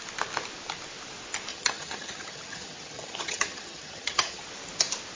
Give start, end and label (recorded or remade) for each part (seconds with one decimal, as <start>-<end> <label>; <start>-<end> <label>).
0.0-1.5 recorded; 1.5-4.4 remade; 4.4-5.1 recorded